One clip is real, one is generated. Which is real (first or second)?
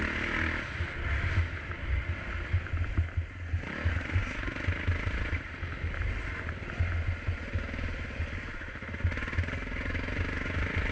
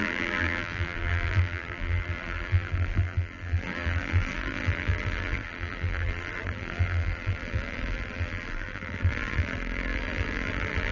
first